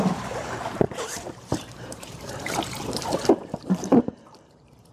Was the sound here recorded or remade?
remade